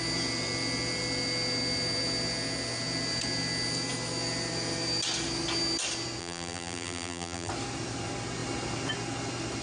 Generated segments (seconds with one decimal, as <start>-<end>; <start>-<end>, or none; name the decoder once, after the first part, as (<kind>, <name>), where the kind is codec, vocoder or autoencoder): 6.2-7.5 (vocoder, BigVGAN v2)